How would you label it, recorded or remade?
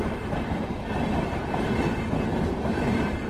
remade